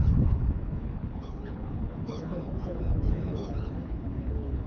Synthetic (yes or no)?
yes